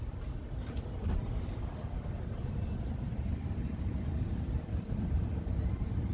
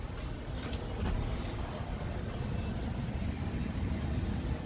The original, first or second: second